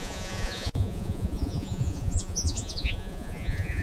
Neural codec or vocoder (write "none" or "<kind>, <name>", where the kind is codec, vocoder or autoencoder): vocoder, Vocos